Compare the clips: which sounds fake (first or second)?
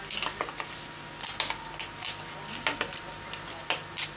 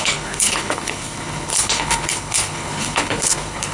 second